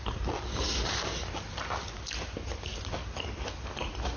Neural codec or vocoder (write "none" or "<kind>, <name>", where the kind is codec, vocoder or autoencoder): none